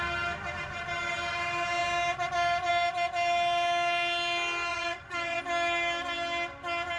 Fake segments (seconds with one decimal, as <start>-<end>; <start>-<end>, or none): 4.7-5.4